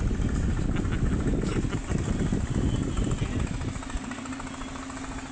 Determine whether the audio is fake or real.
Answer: real